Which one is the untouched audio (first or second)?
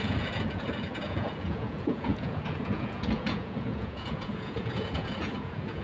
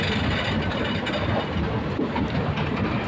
second